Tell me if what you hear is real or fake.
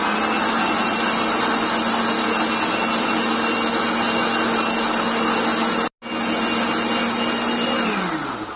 real